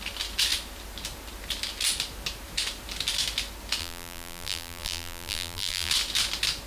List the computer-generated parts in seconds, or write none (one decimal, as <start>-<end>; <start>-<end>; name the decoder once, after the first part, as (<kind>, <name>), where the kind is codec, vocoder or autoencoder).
3.8-5.9 (vocoder, BigVGAN v2)